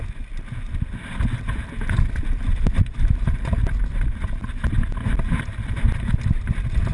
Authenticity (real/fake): real